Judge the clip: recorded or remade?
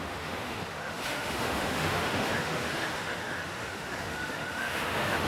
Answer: remade